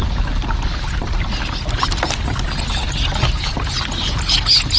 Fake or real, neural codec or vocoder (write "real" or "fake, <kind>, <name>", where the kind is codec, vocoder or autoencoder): real